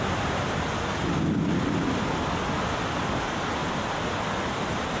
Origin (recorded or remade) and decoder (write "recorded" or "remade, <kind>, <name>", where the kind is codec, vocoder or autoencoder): recorded